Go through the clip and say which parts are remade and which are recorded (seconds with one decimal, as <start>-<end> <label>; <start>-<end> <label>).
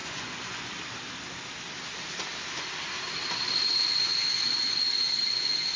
0.0-0.7 remade; 0.7-5.8 recorded